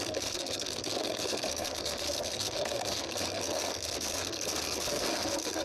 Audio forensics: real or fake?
fake